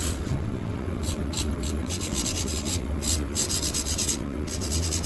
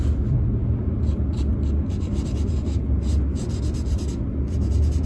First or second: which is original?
second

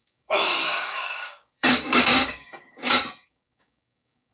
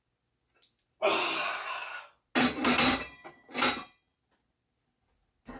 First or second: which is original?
second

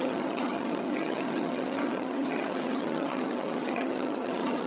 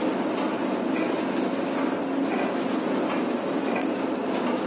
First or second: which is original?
second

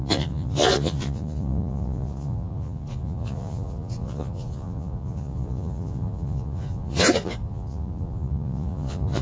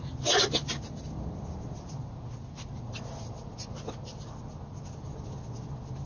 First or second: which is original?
second